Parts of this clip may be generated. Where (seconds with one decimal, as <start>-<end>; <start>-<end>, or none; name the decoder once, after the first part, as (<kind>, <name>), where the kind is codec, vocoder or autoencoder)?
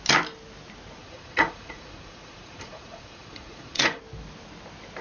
1.0-4.0 (vocoder, Vocos)